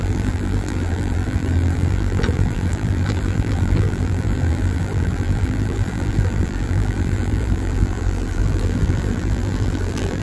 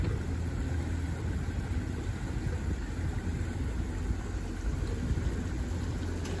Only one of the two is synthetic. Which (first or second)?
first